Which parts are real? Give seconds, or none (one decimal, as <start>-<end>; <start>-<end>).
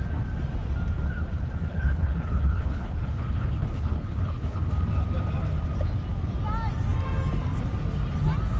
0.0-1.7; 4.7-8.6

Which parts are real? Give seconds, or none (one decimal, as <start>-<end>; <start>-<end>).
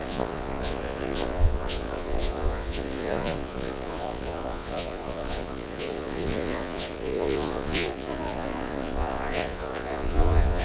none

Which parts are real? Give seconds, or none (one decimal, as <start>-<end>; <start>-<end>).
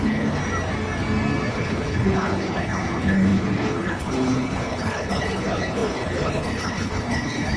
0.4-1.5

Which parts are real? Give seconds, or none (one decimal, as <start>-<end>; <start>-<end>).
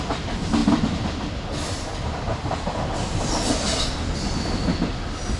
0.0-5.4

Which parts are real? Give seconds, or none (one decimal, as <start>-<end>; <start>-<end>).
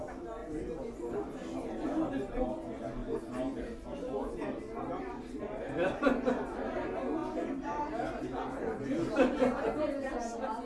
0.0-10.7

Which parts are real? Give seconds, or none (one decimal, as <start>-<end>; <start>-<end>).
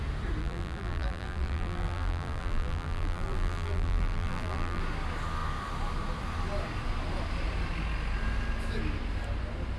0.0-0.4; 4.8-9.8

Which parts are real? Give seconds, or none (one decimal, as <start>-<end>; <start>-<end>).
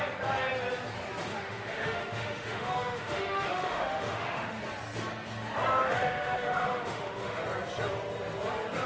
0.0-1.3; 4.6-5.8; 7.4-8.9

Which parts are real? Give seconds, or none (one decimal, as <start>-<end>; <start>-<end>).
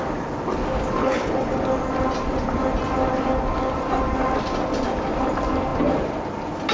0.0-1.0; 1.5-6.7